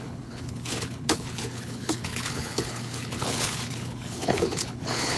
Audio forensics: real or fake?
fake